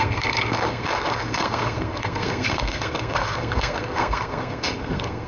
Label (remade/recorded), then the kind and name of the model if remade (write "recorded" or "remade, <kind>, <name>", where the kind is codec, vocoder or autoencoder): remade, codec, SNAC